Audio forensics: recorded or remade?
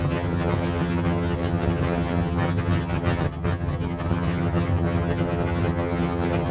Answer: remade